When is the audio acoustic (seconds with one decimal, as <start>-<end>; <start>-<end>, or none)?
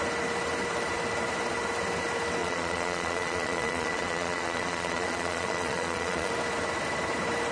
0.0-2.4; 6.3-7.5